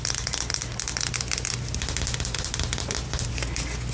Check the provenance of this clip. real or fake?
real